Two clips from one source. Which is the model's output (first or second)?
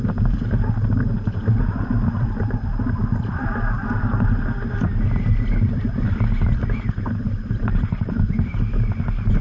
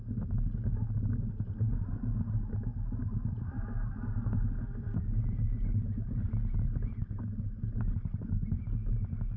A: first